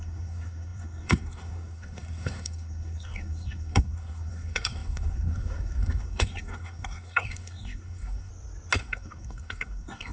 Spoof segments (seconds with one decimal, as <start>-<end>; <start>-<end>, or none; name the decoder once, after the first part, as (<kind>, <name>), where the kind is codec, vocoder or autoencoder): 0.0-8.3 (codec, SNAC); 8.8-10.1